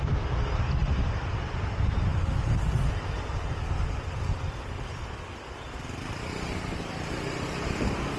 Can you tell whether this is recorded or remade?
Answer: recorded